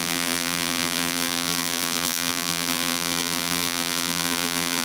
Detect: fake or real fake